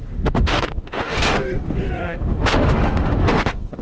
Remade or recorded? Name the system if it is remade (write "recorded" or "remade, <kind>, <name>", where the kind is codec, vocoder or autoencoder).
remade, autoencoder, DAC-VAE